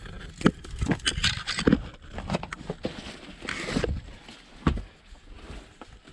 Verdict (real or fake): real